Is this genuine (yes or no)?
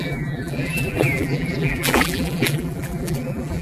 no